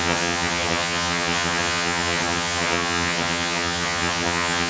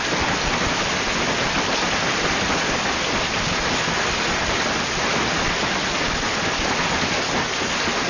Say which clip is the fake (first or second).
first